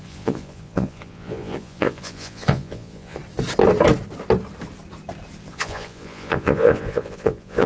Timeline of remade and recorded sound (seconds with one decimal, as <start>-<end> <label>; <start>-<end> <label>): 0.0-3.2 remade; 3.2-5.5 recorded; 5.5-7.7 remade